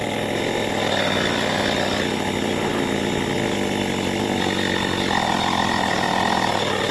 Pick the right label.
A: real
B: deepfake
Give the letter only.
A